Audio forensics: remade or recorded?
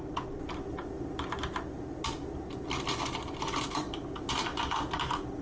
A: recorded